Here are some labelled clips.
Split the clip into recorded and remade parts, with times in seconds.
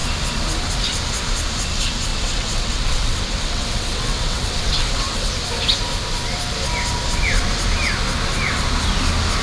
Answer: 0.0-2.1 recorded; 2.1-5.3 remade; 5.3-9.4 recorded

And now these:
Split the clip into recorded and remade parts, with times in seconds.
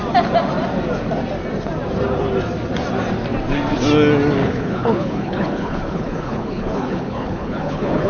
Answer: 0.0-4.4 recorded; 4.4-8.1 remade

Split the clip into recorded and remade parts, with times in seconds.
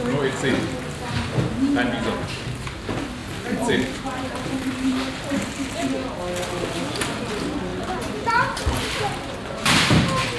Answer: 0.0-3.2 recorded; 3.2-5.1 remade; 5.1-7.7 recorded; 7.7-8.6 remade; 8.6-10.4 recorded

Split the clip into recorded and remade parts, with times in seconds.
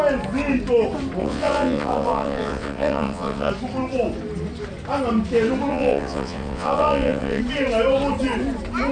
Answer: 0.0-1.2 recorded; 1.2-3.5 remade; 3.5-5.7 recorded; 5.7-7.4 remade; 7.4-8.9 recorded